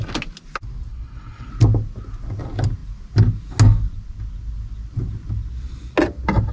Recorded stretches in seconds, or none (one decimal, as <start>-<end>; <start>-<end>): 0.0-0.9; 1.5-6.5